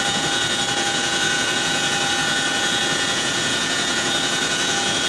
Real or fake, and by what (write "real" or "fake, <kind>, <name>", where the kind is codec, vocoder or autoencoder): fake, vocoder, Vocos